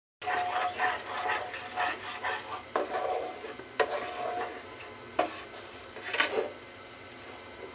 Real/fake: real